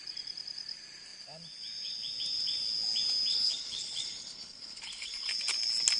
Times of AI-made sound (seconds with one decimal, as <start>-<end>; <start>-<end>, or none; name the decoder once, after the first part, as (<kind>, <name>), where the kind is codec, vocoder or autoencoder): 3.3-5.3 (codec, HILCodec)